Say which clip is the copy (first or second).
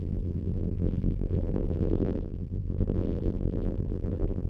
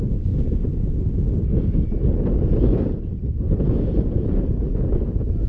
first